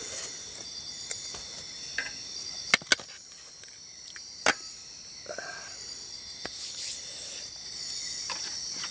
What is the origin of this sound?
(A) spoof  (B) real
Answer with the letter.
B